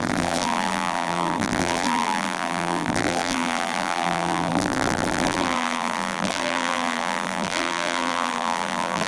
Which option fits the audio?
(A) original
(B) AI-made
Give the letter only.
B